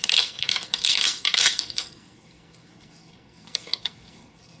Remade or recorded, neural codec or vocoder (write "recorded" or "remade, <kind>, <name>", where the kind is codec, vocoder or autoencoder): remade, codec, SNAC